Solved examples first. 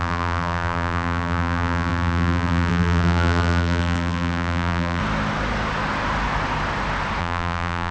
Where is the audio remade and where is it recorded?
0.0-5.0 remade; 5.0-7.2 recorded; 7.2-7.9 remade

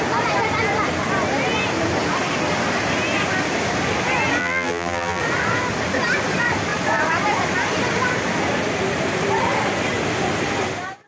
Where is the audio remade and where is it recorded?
0.0-4.4 recorded; 4.4-5.2 remade; 5.2-11.1 recorded

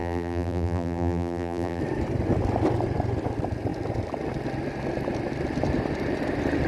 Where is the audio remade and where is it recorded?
0.0-1.8 remade; 1.8-6.7 recorded

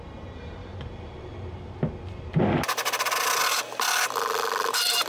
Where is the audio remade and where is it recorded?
0.0-0.6 recorded; 0.6-1.9 remade; 1.9-5.1 recorded

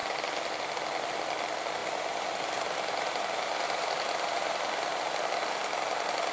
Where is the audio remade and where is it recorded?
0.0-0.8 remade; 0.8-1.8 recorded; 1.8-5.0 remade; 5.0-6.3 recorded

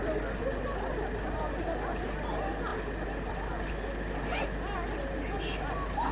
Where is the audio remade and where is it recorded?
0.0-6.1 recorded

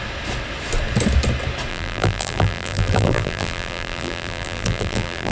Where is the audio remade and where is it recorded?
0.0-1.7 recorded; 1.7-5.3 remade